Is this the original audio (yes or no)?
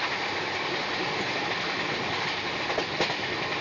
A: yes